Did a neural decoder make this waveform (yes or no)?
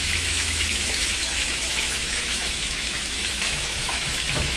yes